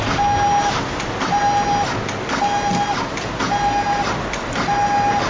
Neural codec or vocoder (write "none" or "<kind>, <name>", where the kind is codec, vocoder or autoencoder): none